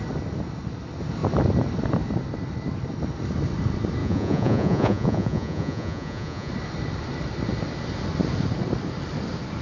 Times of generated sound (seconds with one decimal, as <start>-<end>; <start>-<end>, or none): 4.0-6.5

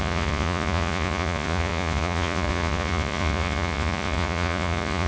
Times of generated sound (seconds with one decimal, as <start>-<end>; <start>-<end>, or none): 0.0-5.1

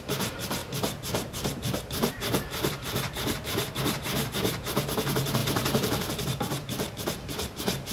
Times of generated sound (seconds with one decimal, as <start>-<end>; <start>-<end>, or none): 0.0-7.9